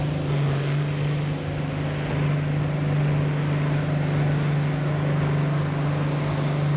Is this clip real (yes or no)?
yes